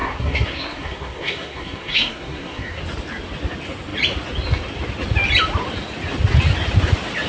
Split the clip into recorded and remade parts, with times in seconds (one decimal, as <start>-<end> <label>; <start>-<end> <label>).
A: 0.0-2.8 remade; 2.8-7.3 recorded